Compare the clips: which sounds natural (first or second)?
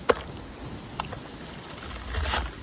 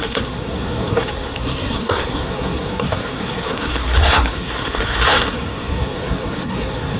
first